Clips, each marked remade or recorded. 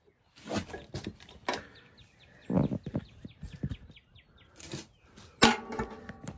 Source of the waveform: recorded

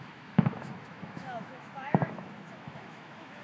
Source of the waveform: remade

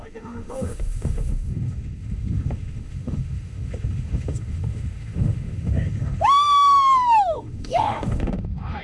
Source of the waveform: remade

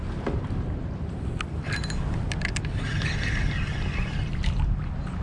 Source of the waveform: recorded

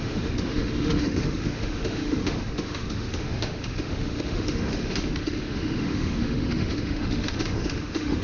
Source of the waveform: remade